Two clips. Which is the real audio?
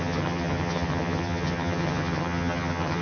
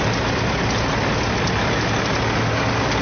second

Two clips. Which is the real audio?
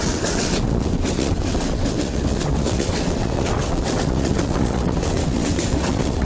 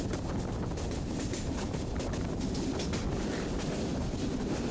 second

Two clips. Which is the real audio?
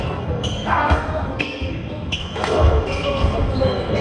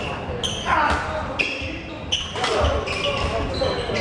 second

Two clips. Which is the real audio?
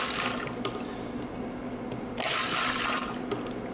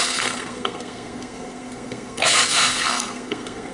first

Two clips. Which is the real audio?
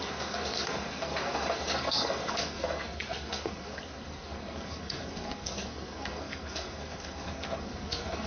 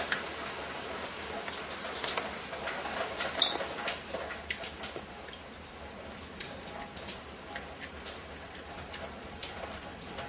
second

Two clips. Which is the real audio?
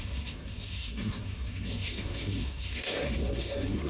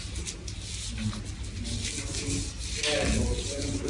second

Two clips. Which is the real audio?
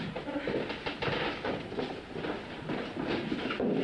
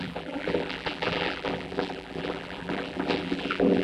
first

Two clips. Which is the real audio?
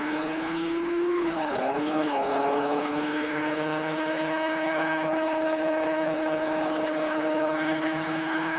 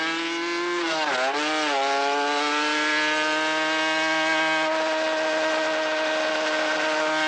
second